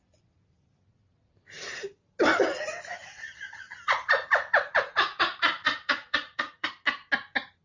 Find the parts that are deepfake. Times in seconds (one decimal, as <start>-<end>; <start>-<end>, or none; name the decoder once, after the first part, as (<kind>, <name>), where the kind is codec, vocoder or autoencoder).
3.0-6.7 (vocoder, Vocos)